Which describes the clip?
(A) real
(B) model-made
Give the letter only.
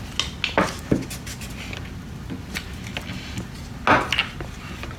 A